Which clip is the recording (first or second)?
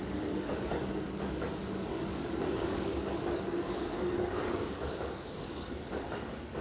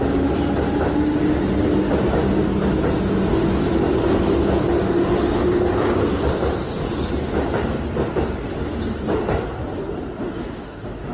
second